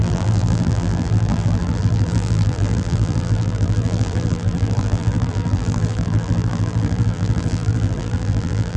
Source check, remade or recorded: remade